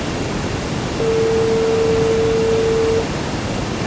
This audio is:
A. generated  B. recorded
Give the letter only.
B